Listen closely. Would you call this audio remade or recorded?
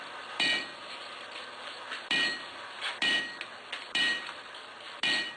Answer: recorded